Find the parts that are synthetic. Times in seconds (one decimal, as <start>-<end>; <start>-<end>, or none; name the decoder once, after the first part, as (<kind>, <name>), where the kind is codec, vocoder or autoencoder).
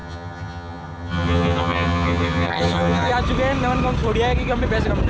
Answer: 0.0-3.1 (vocoder, HiFi-GAN)